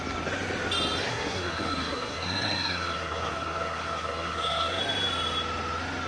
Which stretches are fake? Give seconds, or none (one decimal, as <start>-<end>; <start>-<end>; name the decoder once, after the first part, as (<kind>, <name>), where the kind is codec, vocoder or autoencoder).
1.1-4.8 (codec, SNAC)